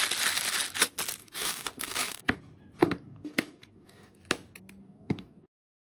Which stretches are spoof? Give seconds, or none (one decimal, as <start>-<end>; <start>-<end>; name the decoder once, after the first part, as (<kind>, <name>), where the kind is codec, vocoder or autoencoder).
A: 1.2-2.4 (codec, DAC); 2.8-4.2; 4.8-6.0